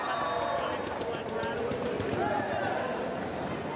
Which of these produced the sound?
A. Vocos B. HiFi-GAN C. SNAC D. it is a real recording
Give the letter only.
D